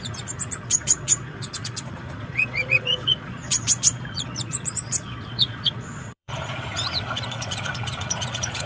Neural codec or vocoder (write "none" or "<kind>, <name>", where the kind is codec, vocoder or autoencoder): vocoder, Vocos